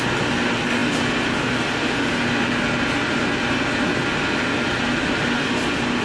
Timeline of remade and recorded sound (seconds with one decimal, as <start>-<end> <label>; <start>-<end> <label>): 0.0-6.0 recorded